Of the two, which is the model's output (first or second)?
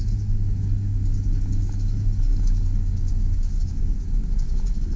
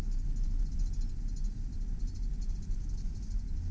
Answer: first